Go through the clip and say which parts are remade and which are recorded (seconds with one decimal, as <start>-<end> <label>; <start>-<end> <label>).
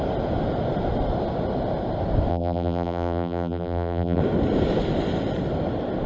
0.0-2.3 recorded; 2.3-4.2 remade; 4.2-6.1 recorded